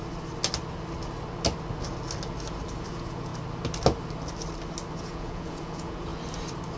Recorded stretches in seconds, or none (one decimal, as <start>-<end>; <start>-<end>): 0.0-2.9; 3.3-5.0; 6.1-6.8